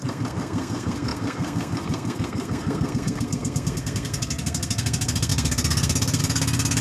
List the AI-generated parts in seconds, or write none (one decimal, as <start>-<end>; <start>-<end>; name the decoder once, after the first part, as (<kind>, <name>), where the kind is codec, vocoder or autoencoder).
0.0-6.8 (codec, SNAC)